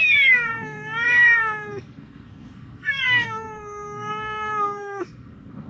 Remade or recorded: remade